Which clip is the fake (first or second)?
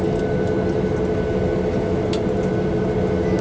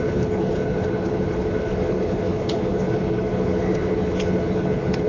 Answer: second